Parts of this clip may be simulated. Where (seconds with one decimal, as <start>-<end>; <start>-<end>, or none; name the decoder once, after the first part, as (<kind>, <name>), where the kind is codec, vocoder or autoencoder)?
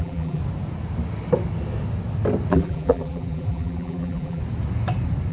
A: 0.0-0.4 (vocoder, BigVGAN v2); 2.5-4.4